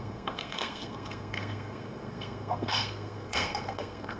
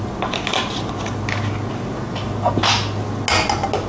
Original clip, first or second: second